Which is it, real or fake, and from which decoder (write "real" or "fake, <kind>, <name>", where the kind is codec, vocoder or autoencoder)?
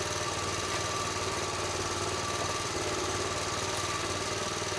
fake, vocoder, BigVGAN v2